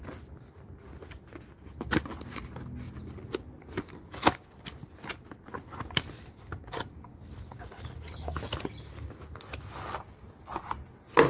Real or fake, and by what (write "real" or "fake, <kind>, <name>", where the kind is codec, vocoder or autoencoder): real